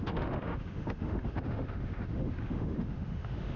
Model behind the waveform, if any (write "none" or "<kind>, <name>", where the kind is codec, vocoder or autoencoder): autoencoder, DAC-VAE